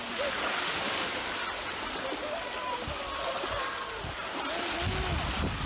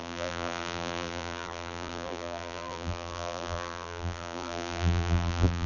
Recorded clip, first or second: first